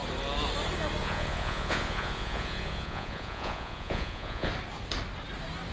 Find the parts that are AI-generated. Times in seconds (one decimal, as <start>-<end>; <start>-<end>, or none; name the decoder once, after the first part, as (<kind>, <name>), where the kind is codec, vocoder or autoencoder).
1.0-4.5 (vocoder, Vocos)